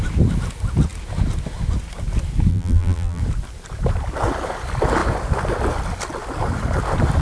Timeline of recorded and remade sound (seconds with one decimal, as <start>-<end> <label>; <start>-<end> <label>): 0.0-2.5 recorded; 2.5-3.2 remade; 3.2-7.2 recorded

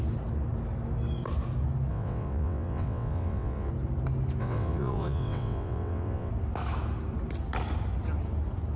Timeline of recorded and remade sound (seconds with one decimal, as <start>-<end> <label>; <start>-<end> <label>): 0.0-1.9 recorded; 1.9-3.7 remade; 3.7-4.4 recorded; 4.4-6.3 remade; 6.3-8.8 recorded

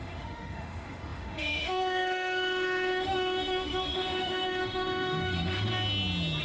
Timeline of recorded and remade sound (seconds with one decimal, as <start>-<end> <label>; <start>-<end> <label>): 0.0-5.7 remade; 5.7-6.4 recorded

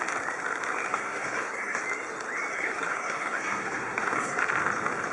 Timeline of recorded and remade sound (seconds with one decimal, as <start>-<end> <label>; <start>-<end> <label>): 0.0-0.9 recorded; 0.9-1.8 remade; 1.8-2.5 recorded; 2.5-4.4 remade; 4.4-5.1 recorded